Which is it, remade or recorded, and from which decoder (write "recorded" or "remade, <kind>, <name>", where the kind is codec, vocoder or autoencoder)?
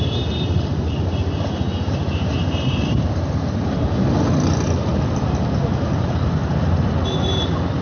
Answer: remade, vocoder, BigVGAN v2